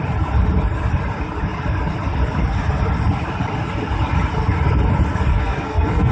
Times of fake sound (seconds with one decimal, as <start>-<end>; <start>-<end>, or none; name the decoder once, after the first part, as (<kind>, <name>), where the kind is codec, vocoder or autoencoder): 5.3-6.1 (codec, SNAC)